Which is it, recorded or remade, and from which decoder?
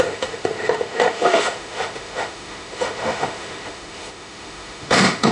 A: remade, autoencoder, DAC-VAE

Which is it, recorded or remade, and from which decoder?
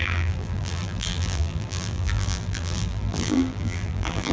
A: remade, vocoder, BigVGAN v2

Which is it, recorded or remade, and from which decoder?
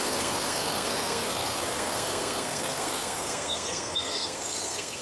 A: remade, codec, SNAC